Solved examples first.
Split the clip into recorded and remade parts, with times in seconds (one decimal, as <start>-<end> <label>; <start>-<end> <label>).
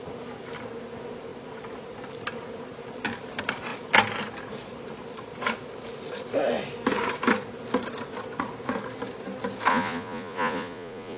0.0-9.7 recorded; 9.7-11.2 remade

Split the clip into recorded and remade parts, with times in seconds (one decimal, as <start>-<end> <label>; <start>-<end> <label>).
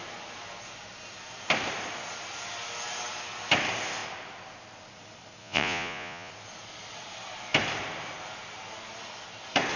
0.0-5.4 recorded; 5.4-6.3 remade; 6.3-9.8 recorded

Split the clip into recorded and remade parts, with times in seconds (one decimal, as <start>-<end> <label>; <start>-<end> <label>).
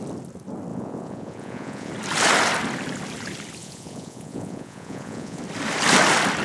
0.0-0.7 recorded; 0.7-1.9 remade; 1.9-3.6 recorded; 3.6-5.4 remade; 5.4-6.4 recorded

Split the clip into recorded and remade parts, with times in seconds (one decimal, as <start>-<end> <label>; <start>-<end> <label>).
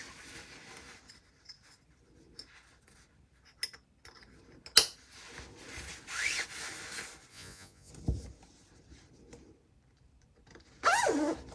0.0-7.3 recorded; 7.3-7.9 remade; 7.9-11.5 recorded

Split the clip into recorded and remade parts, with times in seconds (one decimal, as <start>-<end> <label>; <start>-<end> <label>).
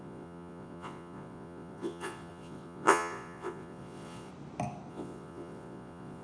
0.0-4.3 remade; 4.3-4.9 recorded; 4.9-6.2 remade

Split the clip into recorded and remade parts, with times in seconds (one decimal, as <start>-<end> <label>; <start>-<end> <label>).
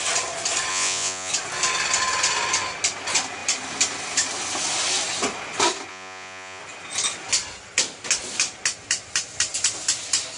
0.0-0.7 recorded; 0.7-1.3 remade; 1.3-5.9 recorded; 5.9-6.6 remade; 6.6-10.4 recorded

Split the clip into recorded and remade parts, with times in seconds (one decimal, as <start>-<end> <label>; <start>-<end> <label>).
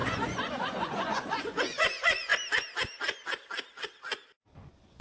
0.0-2.3 remade; 2.3-4.6 recorded; 4.6-5.0 remade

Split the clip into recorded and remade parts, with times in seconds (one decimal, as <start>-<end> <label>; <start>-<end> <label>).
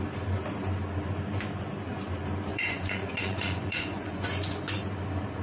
0.0-2.5 recorded; 2.5-4.8 remade; 4.8-5.4 recorded